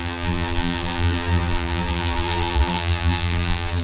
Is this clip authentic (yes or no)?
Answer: no